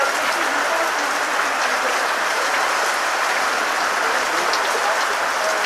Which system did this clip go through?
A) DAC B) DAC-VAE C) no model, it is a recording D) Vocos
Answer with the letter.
C